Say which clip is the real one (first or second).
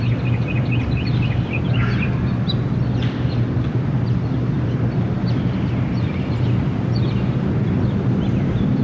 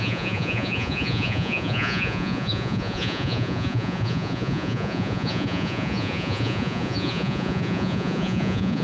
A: first